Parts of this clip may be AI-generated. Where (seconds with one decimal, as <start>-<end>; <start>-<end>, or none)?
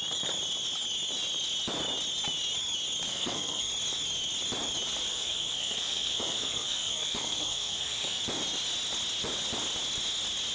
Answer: 3.1-3.7; 5.1-8.2